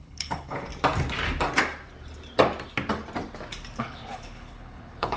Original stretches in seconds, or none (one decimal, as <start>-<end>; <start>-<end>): 0.7-3.8